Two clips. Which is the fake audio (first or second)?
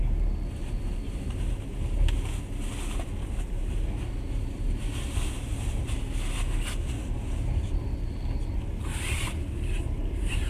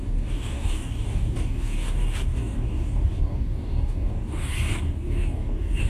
second